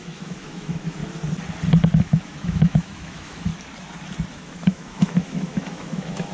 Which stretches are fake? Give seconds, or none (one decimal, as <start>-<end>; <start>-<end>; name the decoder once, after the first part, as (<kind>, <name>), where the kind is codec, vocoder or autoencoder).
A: 0.0-1.0 (autoencoder, DAC-VAE); 2.0-3.5; 4.3-6.3